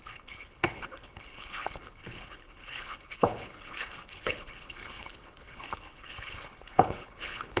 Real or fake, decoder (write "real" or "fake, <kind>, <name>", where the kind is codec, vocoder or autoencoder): fake, codec, HILCodec